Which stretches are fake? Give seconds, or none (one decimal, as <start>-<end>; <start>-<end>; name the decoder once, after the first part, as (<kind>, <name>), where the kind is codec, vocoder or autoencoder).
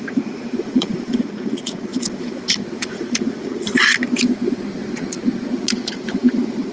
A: 0.0-1.9 (vocoder, Vocos); 2.7-3.7; 4.7-6.7